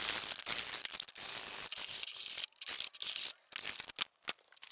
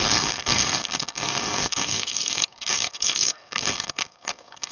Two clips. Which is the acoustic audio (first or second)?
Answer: first